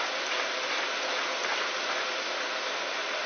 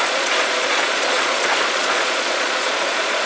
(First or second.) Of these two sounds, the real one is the first